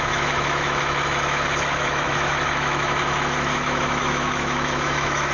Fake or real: fake